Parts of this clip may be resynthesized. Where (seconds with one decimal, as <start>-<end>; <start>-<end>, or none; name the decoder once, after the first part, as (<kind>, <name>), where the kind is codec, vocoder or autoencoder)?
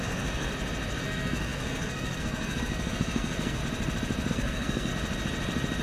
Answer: 0.0-0.5 (codec, SNAC); 1.0-3.6; 4.3-4.9